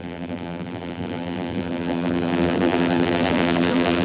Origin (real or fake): fake